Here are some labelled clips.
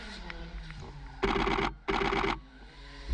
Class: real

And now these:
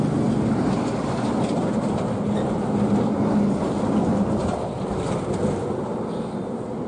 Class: real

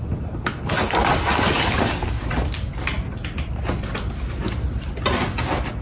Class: real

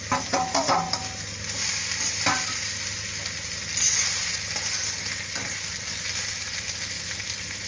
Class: real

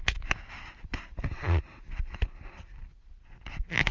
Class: real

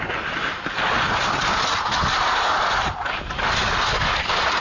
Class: real